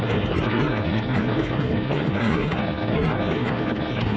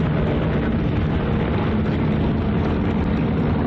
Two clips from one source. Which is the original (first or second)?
second